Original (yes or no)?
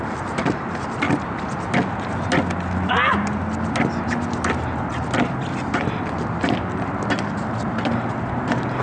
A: yes